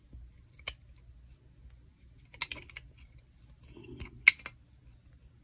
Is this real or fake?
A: real